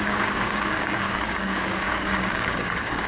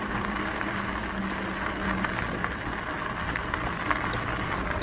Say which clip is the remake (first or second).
first